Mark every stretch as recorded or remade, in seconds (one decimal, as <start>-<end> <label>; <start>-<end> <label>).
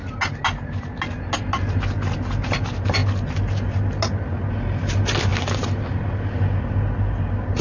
0.0-7.6 recorded